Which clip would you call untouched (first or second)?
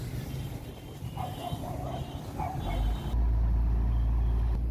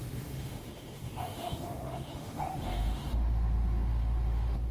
first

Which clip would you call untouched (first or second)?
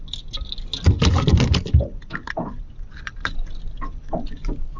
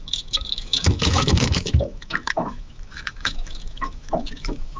first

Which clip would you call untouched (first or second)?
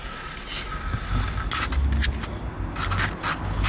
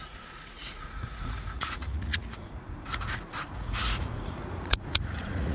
first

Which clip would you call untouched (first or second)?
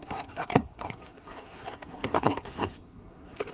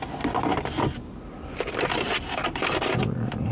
second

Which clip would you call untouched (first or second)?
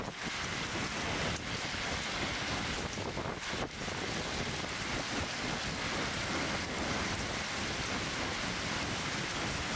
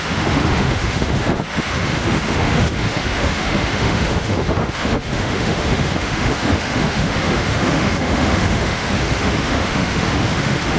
first